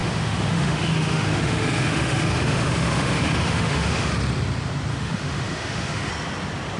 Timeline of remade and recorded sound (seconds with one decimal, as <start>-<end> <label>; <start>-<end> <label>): 0.0-4.1 remade; 4.1-4.9 recorded; 4.9-6.1 remade; 6.1-6.8 recorded